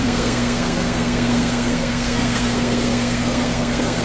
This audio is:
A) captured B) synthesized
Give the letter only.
B